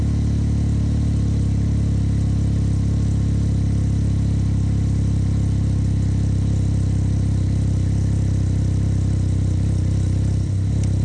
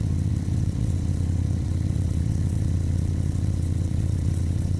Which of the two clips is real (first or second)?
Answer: first